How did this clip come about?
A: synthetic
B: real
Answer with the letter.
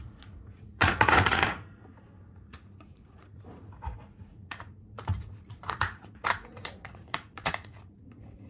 A